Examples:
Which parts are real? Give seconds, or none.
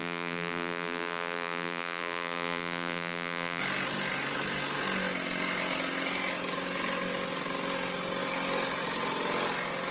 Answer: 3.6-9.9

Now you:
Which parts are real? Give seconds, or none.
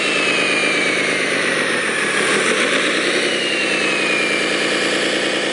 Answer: 0.0-0.6; 3.9-5.5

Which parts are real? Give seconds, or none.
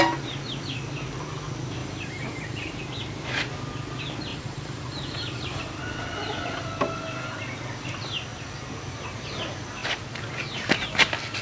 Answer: 0.0-1.8; 2.7-4.3; 5.8-11.4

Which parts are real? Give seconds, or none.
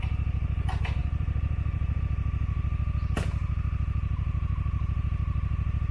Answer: 0.0-1.0; 2.0-5.9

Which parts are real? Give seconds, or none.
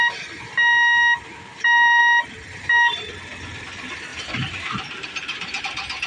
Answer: 0.0-1.5; 2.0-4.1; 5.6-6.1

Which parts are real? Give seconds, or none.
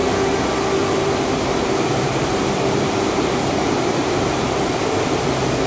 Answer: 0.0-0.8; 4.8-5.7